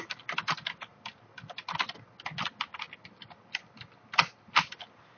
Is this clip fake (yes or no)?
no